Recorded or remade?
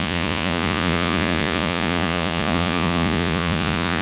remade